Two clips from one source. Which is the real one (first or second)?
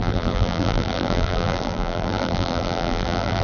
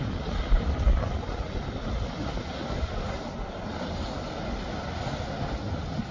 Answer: second